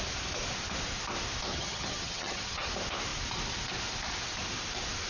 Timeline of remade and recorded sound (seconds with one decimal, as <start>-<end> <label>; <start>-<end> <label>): 0.0-1.5 recorded; 1.5-2.7 remade; 2.7-5.1 recorded